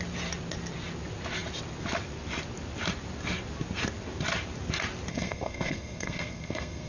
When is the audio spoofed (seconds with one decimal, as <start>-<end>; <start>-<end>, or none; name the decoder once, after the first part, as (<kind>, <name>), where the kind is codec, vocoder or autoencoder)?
5.1-6.9 (codec, SNAC)